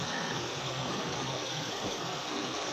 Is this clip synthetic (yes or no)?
yes